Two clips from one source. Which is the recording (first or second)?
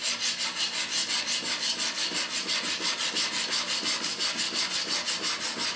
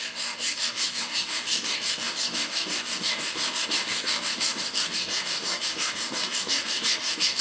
first